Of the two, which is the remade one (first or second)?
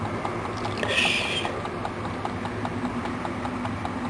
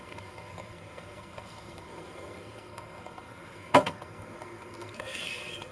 second